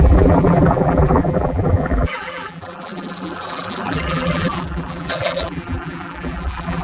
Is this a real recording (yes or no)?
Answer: no